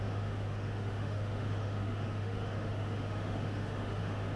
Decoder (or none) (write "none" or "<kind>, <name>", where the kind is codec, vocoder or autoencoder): autoencoder, DAC-VAE